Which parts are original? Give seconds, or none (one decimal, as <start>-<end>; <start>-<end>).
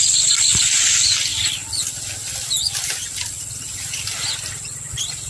0.0-5.3